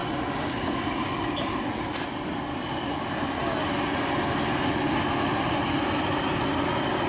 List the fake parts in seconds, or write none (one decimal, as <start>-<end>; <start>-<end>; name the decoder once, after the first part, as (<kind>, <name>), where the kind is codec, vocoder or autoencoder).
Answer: none